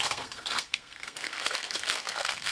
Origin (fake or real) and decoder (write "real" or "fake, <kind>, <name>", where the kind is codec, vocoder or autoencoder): fake, codec, SNAC